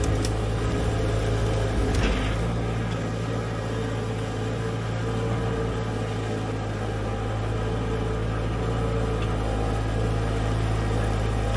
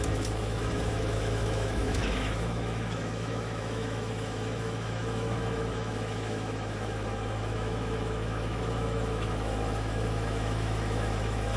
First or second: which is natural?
first